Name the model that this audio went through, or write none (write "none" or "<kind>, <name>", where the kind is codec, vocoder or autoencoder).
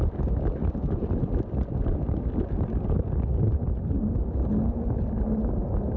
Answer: none